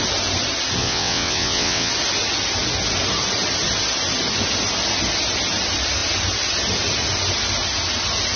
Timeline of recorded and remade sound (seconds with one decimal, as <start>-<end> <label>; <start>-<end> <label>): 0.0-0.8 recorded; 0.8-1.9 remade; 1.9-8.4 recorded